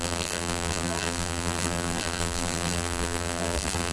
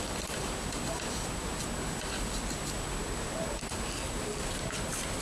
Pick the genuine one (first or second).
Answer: second